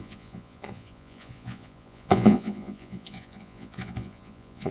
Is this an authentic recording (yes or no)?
no